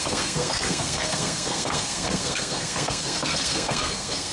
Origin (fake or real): fake